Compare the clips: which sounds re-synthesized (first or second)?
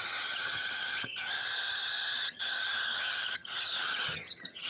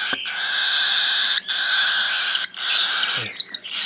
first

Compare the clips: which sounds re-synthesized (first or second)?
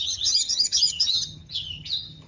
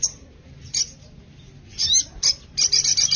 first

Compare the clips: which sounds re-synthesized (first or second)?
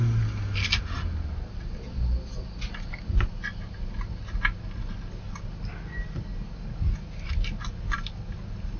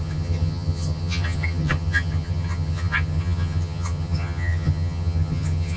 second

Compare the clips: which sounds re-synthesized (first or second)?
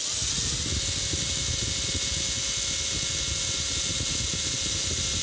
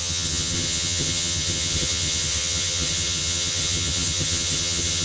second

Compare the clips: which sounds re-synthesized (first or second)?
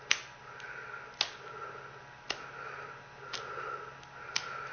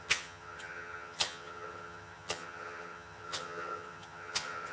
second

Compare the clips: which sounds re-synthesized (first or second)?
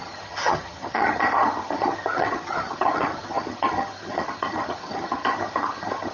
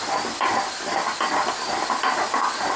first